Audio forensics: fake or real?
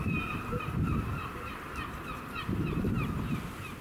fake